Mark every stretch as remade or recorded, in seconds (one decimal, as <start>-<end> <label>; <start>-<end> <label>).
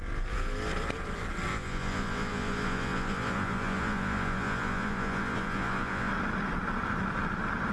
0.0-1.5 recorded; 1.5-6.1 remade; 6.1-7.7 recorded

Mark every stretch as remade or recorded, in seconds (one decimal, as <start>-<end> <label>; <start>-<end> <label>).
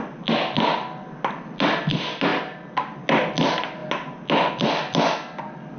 0.0-5.8 recorded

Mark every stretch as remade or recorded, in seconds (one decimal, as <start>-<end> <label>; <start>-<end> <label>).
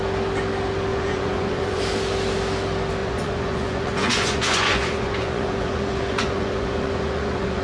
0.0-0.9 recorded; 0.9-1.8 remade; 1.8-3.0 recorded; 3.0-7.6 remade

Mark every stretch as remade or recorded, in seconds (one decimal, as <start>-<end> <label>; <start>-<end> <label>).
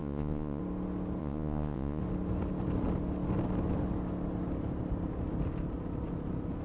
0.0-0.6 remade; 0.6-1.2 recorded; 1.2-2.0 remade; 2.0-6.6 recorded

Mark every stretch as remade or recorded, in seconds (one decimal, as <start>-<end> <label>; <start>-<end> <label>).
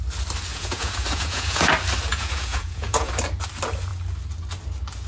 0.0-0.5 recorded; 0.5-1.7 remade; 1.7-2.1 recorded; 2.1-3.1 remade; 3.1-5.1 recorded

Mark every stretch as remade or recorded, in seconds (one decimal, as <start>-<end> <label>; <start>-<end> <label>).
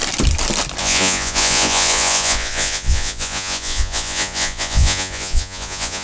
0.0-0.8 recorded; 0.8-6.0 remade